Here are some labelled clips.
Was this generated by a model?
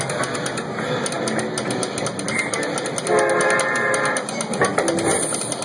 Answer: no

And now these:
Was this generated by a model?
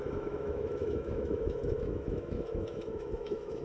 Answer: yes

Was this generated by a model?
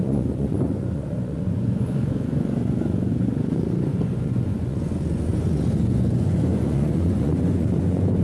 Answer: yes